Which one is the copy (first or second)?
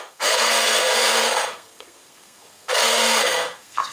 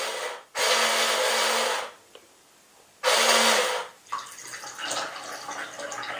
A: first